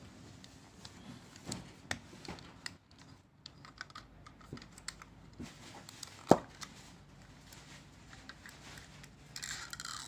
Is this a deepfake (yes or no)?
no